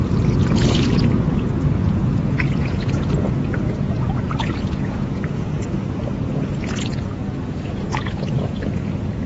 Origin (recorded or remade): remade